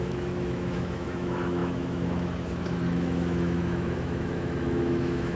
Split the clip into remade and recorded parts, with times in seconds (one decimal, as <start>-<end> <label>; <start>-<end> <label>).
0.0-5.4 remade